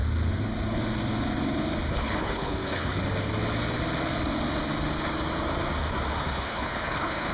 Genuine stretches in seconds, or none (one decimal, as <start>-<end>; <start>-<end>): 0.0-1.9; 3.0-6.2